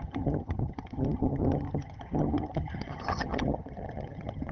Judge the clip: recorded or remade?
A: remade